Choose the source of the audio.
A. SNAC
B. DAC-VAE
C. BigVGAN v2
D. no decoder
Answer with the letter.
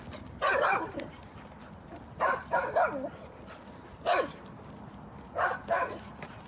D